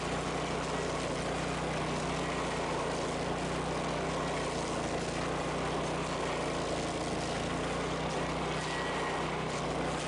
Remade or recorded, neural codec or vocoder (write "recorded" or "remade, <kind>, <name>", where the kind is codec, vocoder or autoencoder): recorded